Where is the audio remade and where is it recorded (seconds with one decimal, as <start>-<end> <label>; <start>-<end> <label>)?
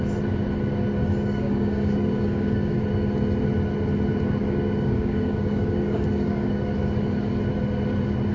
0.0-1.0 recorded; 1.0-2.8 remade; 2.8-4.4 recorded; 4.4-6.7 remade; 6.7-8.3 recorded